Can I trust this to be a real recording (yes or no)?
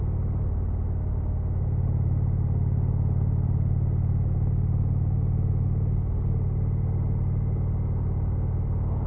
yes